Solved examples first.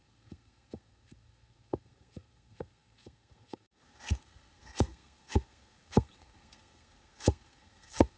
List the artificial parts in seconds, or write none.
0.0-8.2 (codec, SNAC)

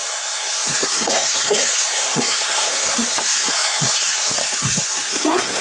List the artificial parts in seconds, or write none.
0.0-5.6 (codec, SNAC)

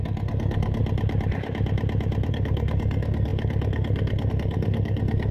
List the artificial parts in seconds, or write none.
0.0-0.8 (codec, SNAC); 2.3-5.3